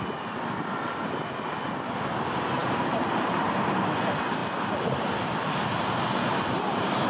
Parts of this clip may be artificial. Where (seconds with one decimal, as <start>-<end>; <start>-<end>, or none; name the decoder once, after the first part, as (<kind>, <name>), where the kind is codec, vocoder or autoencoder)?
none